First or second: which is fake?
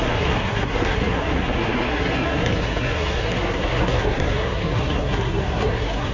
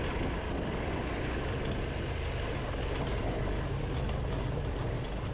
first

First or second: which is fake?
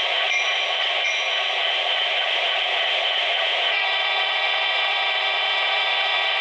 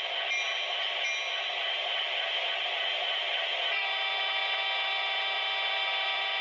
first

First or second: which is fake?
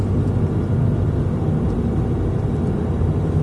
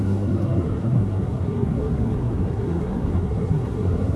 second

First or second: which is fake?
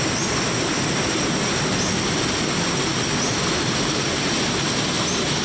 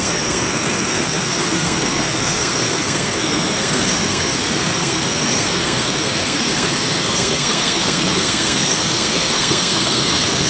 second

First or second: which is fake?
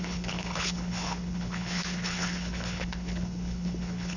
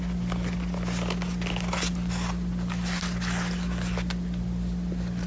first